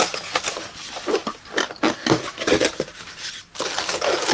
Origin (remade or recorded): recorded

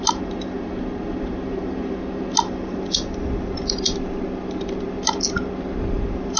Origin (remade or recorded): recorded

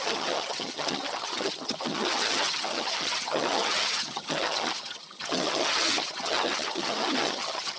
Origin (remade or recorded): remade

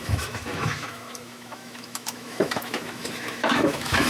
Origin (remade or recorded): remade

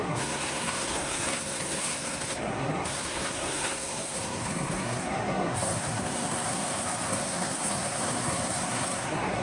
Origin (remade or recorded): remade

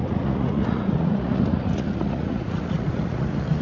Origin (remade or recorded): remade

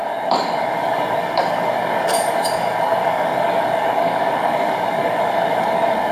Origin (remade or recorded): remade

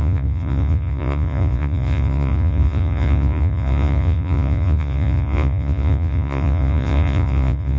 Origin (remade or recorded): remade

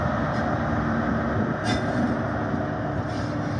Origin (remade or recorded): recorded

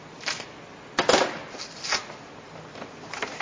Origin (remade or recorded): recorded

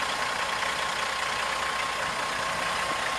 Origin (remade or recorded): recorded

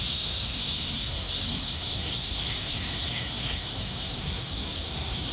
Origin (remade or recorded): remade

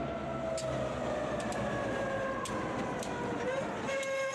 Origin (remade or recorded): recorded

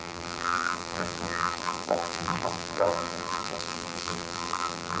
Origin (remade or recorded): remade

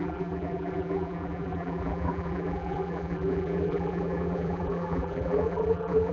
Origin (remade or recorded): remade